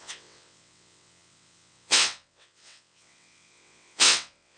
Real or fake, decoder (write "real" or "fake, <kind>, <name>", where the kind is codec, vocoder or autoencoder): fake, vocoder, WaveNeXt